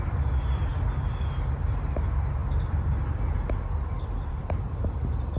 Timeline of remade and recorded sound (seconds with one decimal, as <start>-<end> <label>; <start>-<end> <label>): 0.0-5.4 recorded